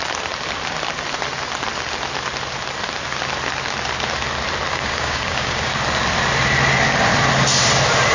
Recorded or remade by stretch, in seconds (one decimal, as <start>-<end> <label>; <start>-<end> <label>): 0.0-4.7 recorded; 4.7-5.7 remade; 5.7-8.1 recorded